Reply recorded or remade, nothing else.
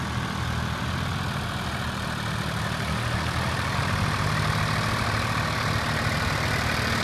recorded